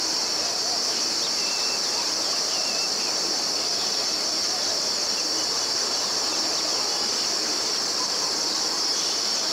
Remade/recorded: remade